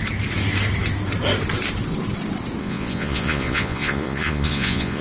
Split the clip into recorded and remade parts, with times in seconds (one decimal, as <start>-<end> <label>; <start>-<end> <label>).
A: 0.0-2.6 recorded; 2.6-5.0 remade